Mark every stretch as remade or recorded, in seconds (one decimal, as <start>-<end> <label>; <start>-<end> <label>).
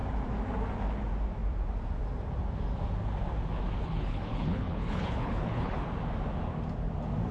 0.0-3.8 recorded; 3.8-5.9 remade; 5.9-7.3 recorded